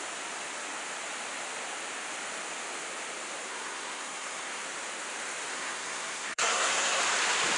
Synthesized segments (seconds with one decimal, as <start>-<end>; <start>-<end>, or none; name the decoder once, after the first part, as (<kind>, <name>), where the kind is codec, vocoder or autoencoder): 3.5-4.6 (codec, SNAC); 5.5-7.0